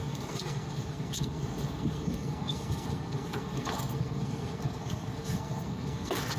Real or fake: fake